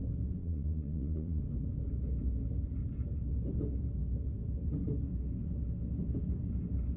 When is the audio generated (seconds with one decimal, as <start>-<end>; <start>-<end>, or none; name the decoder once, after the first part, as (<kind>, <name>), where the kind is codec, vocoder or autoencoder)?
0.4-1.4 (vocoder, Vocos)